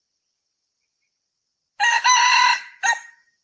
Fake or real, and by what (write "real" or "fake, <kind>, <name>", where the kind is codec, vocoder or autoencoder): real